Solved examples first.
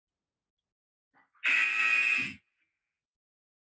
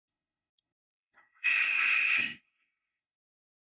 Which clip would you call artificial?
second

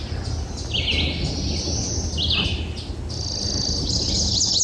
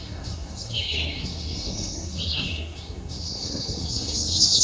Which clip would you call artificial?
second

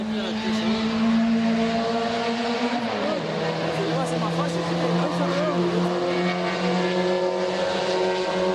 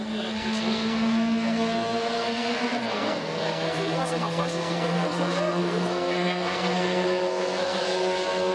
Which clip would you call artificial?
second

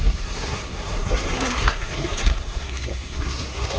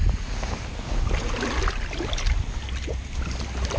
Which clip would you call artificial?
first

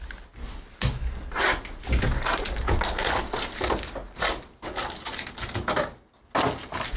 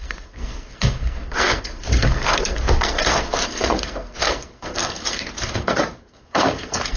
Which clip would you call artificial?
second